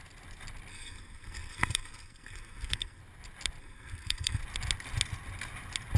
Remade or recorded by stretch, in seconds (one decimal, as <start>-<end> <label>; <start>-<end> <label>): 0.0-0.7 recorded; 0.7-3.0 remade; 3.0-3.6 recorded; 3.6-4.4 remade; 4.4-6.0 recorded